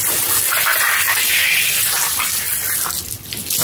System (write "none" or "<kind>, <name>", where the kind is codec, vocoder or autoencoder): vocoder, BigVGAN v2